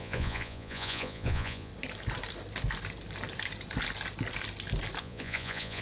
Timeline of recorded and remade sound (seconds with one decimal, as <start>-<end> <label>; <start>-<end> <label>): 0.0-1.7 remade; 1.7-5.0 recorded; 5.0-5.8 remade